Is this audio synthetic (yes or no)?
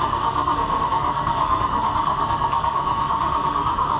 yes